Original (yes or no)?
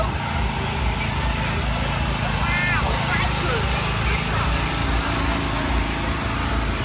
yes